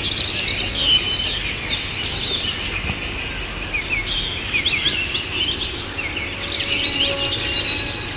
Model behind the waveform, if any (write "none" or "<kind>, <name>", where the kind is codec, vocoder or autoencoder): none